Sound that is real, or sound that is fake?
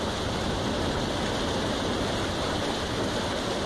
real